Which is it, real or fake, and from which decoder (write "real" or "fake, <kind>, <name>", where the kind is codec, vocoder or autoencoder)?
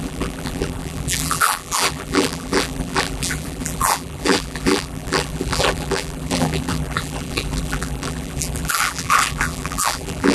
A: fake, vocoder, BigVGAN v2